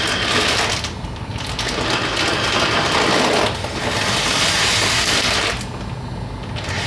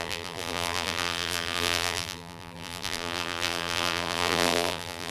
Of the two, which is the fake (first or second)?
second